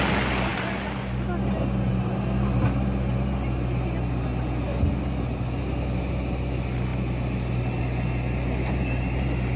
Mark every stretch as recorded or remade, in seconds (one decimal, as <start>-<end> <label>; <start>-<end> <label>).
0.0-9.6 recorded